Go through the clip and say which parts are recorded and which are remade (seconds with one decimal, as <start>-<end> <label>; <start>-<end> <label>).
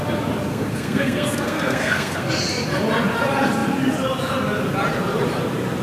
0.0-0.5 recorded; 0.5-2.3 remade; 2.3-5.8 recorded